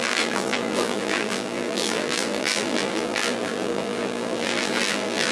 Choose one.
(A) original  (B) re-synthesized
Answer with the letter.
B